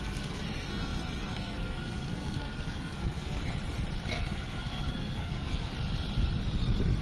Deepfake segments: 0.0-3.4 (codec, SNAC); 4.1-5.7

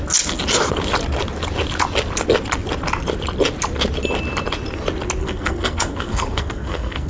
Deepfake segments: 5.2-7.1 (codec, SNAC)

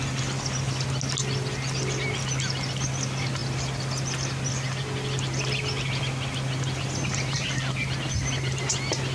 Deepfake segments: none

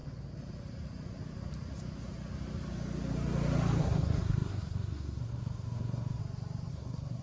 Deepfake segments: 3.8-6.2 (codec, SNAC); 6.7-7.2

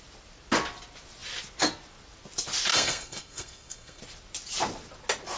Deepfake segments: 2.7-4.0 (codec, SNAC)